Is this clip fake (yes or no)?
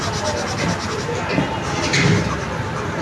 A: no